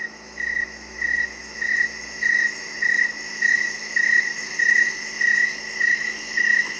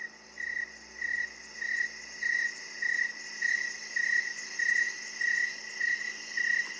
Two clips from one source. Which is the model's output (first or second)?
first